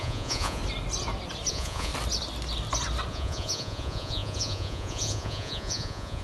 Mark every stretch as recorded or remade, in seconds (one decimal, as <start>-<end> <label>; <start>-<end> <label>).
0.0-0.6 remade; 0.6-1.5 recorded; 1.5-1.9 remade; 1.9-3.1 recorded; 3.1-6.2 remade

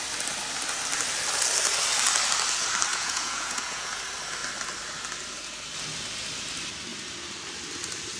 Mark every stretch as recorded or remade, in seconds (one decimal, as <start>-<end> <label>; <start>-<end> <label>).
0.0-2.9 recorded; 2.9-4.0 remade; 4.0-8.2 recorded

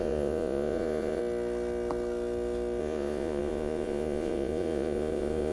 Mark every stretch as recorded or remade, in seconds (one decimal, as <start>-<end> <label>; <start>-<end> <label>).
0.0-1.2 remade; 1.2-2.8 recorded; 2.8-5.5 remade

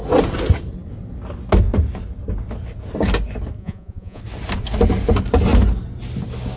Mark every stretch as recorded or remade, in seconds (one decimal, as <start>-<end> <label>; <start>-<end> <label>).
0.0-3.6 recorded; 3.6-4.2 remade; 4.2-6.6 recorded

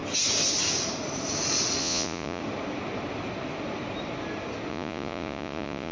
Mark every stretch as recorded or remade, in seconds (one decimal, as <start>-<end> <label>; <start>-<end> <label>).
0.0-1.8 recorded; 1.8-2.4 remade; 2.4-4.7 recorded; 4.7-5.9 remade

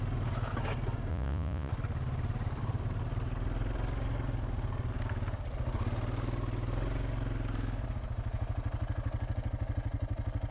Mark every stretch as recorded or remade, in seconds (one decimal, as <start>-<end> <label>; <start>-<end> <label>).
0.0-1.1 recorded; 1.1-1.7 remade; 1.7-10.5 recorded

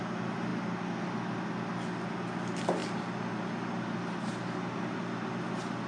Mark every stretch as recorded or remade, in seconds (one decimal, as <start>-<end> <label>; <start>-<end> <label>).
0.0-5.9 recorded